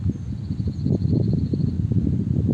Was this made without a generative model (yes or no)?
yes